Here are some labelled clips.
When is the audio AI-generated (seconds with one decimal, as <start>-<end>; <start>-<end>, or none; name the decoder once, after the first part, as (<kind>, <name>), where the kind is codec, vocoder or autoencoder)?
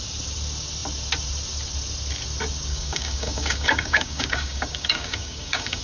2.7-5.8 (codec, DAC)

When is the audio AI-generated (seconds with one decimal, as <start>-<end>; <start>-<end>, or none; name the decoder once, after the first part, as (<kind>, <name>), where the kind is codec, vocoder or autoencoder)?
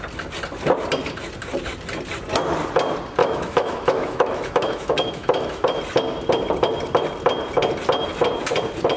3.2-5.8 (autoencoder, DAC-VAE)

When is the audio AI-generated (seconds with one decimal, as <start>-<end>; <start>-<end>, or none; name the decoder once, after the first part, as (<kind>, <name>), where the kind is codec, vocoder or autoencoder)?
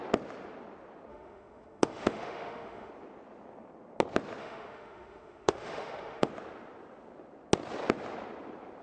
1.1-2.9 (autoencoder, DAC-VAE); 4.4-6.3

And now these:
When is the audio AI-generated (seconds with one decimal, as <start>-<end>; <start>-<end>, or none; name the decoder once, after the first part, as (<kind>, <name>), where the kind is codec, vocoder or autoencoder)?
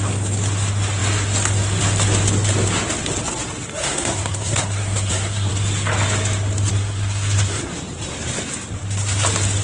3.8-5.5 (codec, SNAC); 6.7-7.7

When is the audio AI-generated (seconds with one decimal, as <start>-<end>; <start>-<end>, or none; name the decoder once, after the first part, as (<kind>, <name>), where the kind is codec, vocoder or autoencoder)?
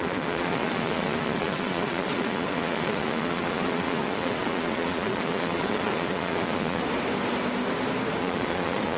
0.0-6.8 (vocoder, Vocos); 8.2-9.0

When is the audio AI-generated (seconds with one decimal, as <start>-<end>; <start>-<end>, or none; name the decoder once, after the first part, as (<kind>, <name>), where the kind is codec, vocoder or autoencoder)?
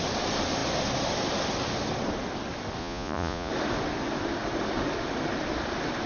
2.8-3.5 (vocoder, Vocos)